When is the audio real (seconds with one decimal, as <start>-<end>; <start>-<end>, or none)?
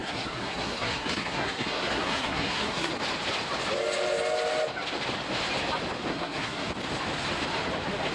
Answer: 2.9-6.1; 6.7-8.1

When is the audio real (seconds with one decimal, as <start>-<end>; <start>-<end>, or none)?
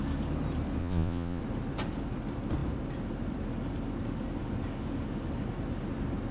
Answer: 0.0-0.8; 1.4-6.3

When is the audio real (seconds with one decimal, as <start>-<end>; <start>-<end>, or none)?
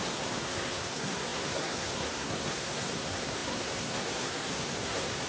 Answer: none